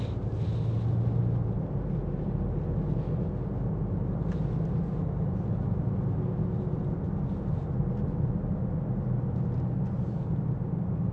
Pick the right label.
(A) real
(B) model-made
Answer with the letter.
A